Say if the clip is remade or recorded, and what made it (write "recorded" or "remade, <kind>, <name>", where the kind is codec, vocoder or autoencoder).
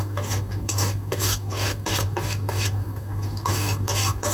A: remade, codec, DAC